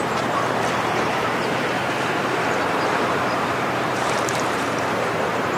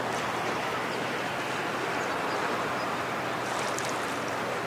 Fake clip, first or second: first